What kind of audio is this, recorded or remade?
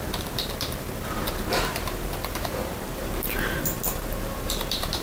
remade